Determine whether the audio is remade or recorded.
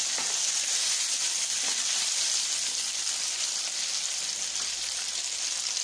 recorded